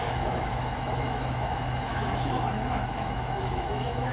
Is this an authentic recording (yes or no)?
no